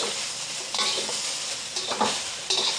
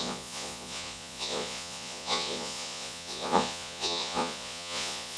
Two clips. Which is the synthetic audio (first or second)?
second